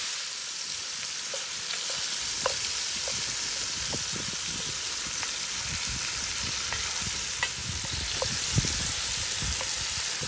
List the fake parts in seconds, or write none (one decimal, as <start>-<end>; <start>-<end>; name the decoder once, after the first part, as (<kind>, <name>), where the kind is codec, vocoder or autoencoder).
0.4-1.1 (vocoder, BigVGAN v2); 7.6-9.4